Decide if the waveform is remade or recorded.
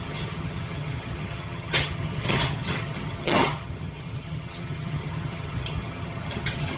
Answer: remade